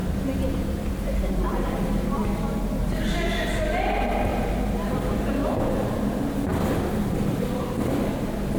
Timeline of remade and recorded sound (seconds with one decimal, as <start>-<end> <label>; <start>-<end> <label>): 0.0-2.4 remade; 2.4-4.3 recorded; 4.3-5.3 remade; 5.3-8.6 recorded